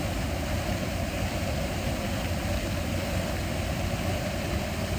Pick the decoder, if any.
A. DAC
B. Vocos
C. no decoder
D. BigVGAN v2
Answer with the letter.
C